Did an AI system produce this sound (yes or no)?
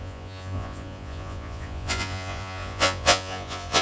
yes